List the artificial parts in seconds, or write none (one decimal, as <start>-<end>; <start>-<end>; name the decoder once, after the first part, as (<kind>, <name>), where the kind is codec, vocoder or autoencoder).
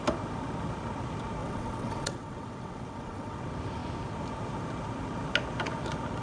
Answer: 1.4-3.4 (vocoder, WaveNeXt)